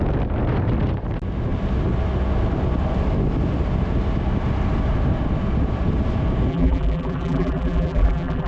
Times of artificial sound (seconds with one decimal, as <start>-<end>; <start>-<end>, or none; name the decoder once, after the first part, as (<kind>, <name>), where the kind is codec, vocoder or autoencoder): 6.5-8.5 (vocoder, BigVGAN v2)